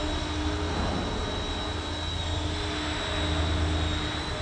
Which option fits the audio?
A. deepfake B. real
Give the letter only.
B